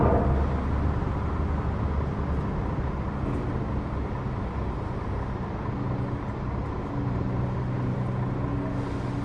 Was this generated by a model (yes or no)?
no